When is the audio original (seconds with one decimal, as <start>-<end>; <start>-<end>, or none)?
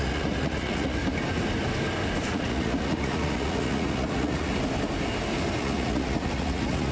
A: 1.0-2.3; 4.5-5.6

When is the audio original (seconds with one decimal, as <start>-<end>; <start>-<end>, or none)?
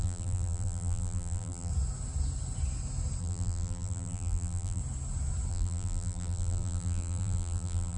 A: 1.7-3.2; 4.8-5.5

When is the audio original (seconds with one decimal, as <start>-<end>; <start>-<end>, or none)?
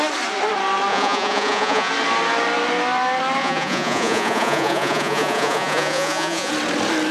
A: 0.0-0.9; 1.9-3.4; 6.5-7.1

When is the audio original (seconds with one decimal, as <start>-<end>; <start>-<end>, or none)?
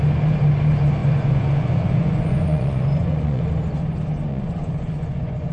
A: 0.0-1.0; 3.4-4.3